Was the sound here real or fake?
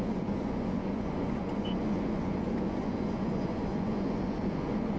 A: fake